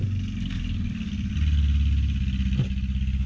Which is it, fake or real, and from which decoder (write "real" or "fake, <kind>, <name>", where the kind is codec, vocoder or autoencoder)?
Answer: real